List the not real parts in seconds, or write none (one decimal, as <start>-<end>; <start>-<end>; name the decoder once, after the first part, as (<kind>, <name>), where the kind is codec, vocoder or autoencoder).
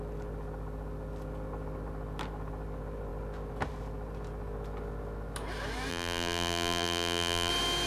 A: 5.9-7.5 (vocoder, BigVGAN v2)